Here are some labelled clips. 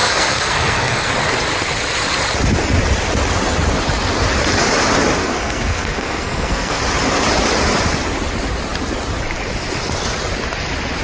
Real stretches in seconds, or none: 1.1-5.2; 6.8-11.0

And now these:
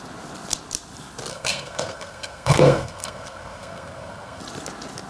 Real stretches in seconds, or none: 0.0-1.3; 4.4-5.1

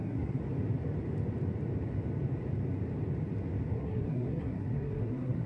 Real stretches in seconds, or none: 0.4-3.7

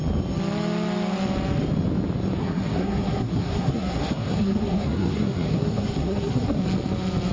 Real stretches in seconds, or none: 0.0-2.4; 6.6-7.3